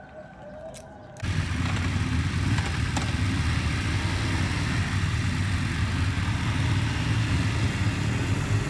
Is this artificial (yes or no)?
no